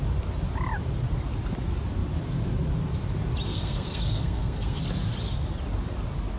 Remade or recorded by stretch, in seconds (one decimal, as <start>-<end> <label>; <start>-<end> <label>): 0.0-3.5 recorded; 3.5-4.8 remade; 4.8-6.4 recorded